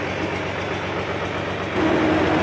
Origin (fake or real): real